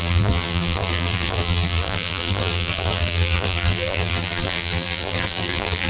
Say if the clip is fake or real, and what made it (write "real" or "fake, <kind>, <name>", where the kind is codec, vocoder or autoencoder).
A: fake, vocoder, BigVGAN v2